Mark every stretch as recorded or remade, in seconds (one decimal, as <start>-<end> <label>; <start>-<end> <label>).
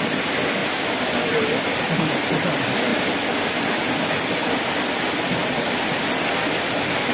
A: 0.0-7.1 recorded